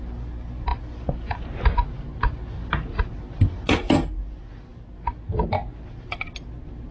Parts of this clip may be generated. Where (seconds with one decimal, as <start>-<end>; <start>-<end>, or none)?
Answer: none